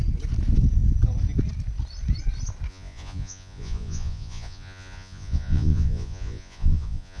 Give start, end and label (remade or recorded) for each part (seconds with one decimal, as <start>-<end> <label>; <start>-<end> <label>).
0.0-2.7 recorded; 2.7-7.2 remade